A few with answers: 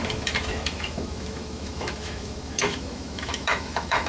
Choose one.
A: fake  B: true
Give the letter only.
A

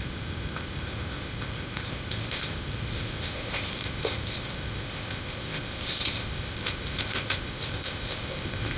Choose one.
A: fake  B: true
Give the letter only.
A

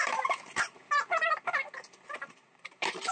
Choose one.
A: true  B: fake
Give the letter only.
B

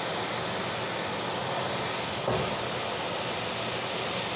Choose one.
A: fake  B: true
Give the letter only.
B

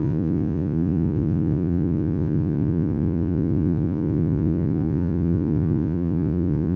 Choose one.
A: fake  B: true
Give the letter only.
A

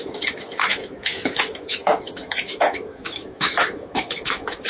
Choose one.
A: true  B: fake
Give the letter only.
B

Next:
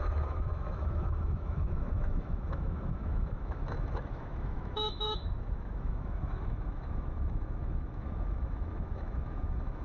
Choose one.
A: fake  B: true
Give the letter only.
A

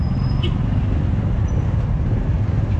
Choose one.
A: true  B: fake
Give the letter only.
A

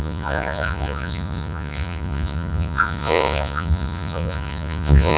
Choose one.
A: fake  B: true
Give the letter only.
A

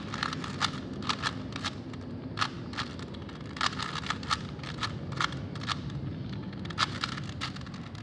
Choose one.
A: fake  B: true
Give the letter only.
B